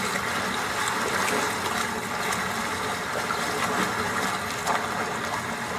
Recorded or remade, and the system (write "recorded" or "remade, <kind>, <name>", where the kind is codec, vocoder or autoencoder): recorded